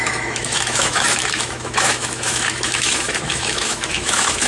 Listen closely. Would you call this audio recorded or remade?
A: remade